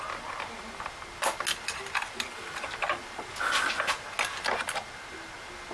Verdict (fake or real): real